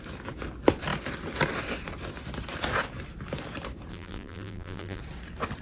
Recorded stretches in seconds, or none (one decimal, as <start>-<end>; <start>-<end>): 0.0-3.9; 5.0-5.6